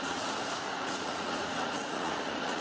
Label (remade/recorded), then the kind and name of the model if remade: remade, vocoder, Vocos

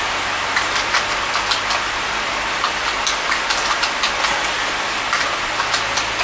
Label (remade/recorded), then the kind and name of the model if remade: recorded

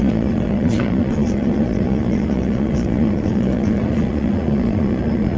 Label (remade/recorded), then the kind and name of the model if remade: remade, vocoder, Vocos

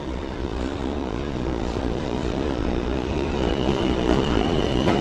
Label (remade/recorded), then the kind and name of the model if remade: remade, vocoder, Vocos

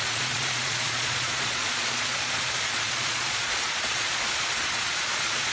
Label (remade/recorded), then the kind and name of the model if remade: remade, vocoder, Vocos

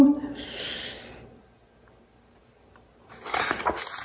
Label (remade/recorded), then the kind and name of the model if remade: recorded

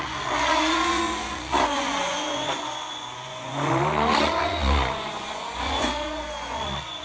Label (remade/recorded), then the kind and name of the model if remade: remade, vocoder, Vocos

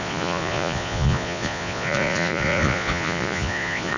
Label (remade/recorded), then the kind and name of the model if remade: remade, vocoder, Vocos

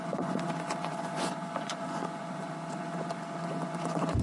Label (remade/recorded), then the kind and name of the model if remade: remade, vocoder, Vocos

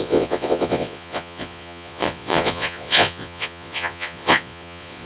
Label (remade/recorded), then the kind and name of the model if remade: remade, vocoder, Vocos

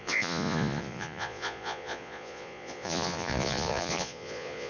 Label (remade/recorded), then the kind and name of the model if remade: remade, vocoder, Vocos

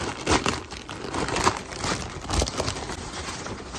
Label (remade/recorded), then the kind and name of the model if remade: recorded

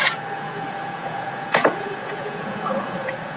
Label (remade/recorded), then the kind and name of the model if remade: remade, vocoder, Vocos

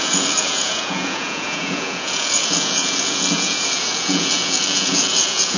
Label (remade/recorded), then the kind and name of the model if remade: remade, vocoder, Vocos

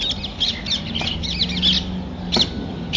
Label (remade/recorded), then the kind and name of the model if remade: recorded